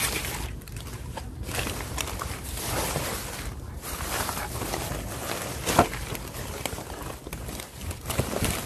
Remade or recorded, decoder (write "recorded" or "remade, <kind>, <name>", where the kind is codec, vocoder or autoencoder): recorded